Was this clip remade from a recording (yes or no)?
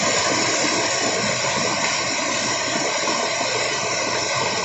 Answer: no